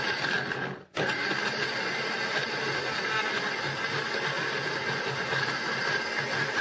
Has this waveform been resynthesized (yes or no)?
no